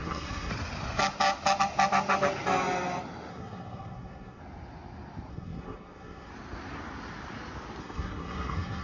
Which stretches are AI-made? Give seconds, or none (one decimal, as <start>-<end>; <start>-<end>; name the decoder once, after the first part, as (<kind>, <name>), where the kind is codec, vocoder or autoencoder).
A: 0.0-0.5 (codec, SNAC); 3.3-4.4; 5.3-6.3; 7.8-8.8